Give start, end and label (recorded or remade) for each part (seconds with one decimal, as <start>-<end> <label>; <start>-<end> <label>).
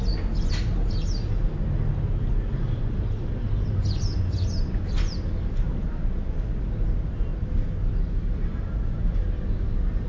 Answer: 0.0-7.3 recorded; 7.3-7.9 remade; 7.9-10.1 recorded